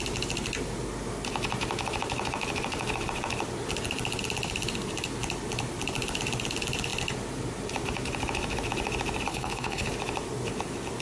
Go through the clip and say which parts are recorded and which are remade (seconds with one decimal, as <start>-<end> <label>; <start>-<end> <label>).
0.0-9.3 recorded; 9.3-9.9 remade; 9.9-11.0 recorded